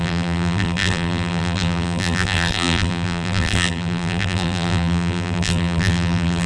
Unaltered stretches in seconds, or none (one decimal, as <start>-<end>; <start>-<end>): none